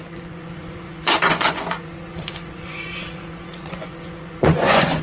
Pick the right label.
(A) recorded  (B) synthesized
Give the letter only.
B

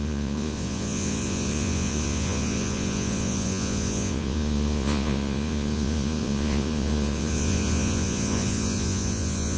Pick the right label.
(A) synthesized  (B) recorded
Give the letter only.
A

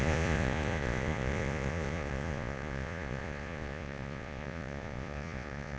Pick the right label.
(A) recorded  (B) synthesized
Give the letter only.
B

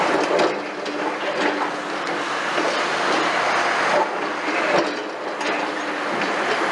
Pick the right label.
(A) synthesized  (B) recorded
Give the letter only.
B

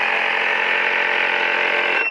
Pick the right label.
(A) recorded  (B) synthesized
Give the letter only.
A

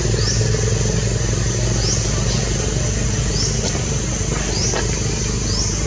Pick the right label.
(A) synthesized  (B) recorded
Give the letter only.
B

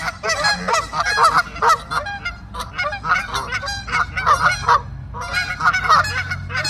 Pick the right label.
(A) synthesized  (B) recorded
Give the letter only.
B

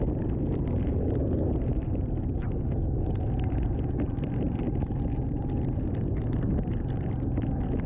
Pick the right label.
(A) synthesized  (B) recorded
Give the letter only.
B